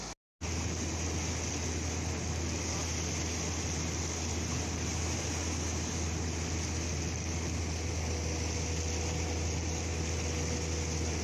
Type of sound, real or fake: real